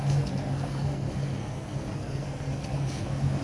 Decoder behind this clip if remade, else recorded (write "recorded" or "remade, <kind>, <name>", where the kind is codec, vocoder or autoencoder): remade, codec, SNAC